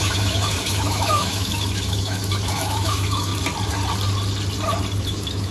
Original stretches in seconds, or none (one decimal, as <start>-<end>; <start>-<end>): 3.3-5.0